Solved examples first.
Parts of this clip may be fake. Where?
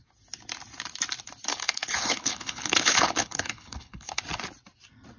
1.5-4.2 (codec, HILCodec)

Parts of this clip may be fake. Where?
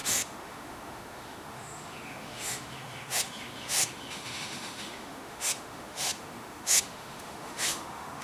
0.0-8.2 (autoencoder, DAC-VAE)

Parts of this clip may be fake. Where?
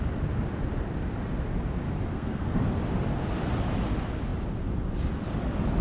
2.1-2.6 (codec, SNAC)